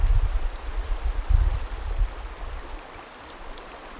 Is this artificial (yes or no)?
no